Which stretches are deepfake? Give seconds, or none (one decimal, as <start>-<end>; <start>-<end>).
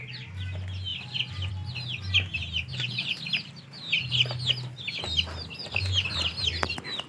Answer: 2.7-3.2